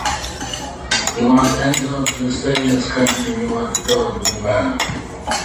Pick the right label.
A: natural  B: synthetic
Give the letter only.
B